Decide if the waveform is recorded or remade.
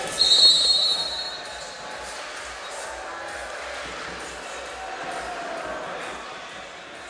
recorded